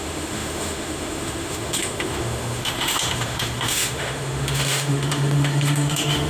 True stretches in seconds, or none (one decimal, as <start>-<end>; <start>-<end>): none